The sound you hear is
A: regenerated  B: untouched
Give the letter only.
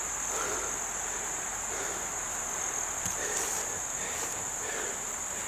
B